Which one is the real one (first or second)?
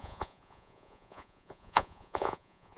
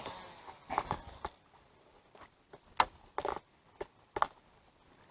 second